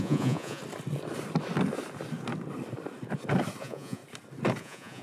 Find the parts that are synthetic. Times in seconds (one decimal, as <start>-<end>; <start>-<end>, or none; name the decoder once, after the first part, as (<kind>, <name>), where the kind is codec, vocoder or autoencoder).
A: 0.0-0.6 (vocoder, Vocos); 3.6-4.0; 4.6-5.0